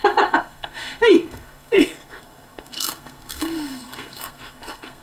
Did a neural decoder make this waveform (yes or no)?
yes